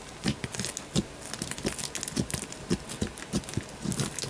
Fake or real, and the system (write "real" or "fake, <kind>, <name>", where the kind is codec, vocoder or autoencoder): real